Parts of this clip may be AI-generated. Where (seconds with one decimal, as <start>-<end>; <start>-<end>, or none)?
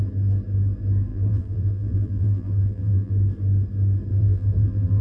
1.1-3.1; 4.1-5.0